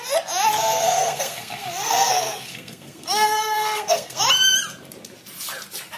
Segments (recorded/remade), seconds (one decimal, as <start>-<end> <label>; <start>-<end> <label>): 0.0-0.6 recorded; 0.6-4.2 remade; 4.2-6.0 recorded